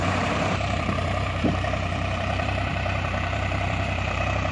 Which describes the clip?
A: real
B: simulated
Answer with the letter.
B